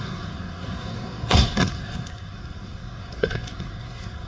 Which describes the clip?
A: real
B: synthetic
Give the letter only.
B